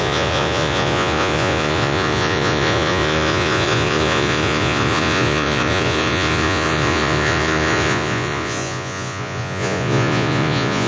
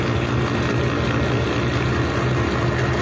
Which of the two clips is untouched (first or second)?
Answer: second